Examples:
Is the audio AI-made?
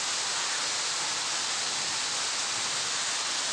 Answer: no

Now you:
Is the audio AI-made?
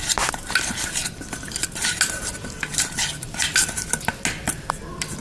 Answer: no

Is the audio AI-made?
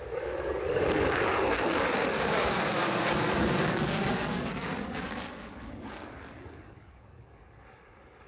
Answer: yes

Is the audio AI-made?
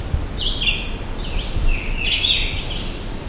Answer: no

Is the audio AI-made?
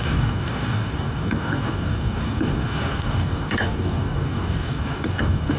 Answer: yes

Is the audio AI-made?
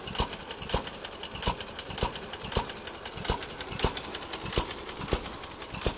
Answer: no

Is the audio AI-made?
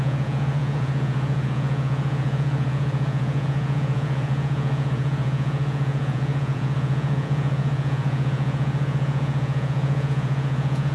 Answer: yes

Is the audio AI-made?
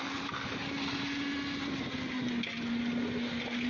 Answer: no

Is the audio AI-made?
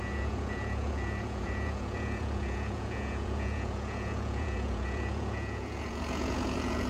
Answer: yes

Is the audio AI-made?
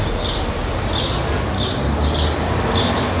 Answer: no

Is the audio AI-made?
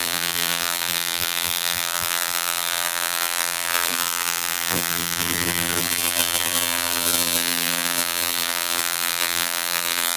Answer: yes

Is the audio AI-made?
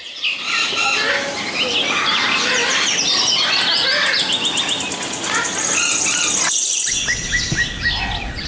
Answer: no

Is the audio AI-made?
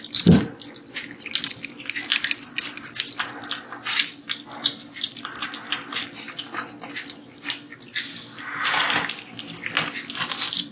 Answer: no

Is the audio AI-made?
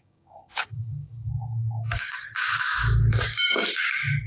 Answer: yes